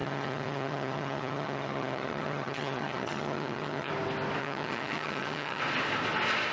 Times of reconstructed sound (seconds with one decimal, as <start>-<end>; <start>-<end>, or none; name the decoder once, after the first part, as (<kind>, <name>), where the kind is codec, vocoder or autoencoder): 0.0-3.9 (vocoder, HiFi-GAN); 4.4-5.6